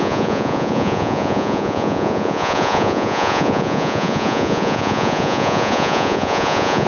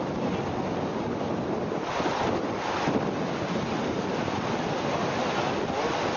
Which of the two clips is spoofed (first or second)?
first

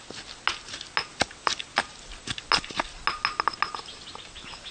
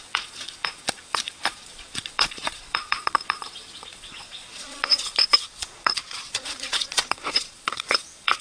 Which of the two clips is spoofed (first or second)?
second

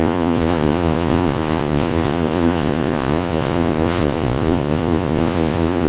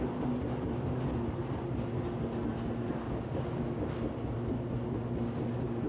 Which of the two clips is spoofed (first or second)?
first